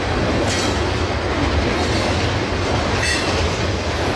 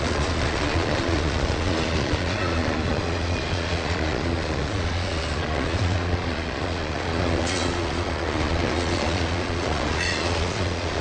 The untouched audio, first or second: first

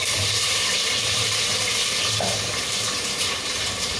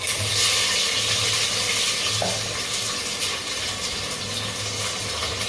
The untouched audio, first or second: second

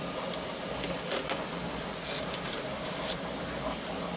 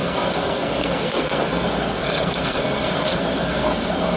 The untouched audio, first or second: first